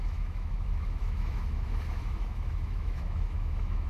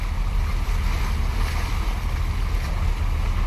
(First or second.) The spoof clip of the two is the first